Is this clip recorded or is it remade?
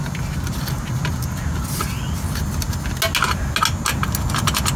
recorded